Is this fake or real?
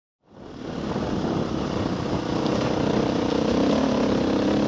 real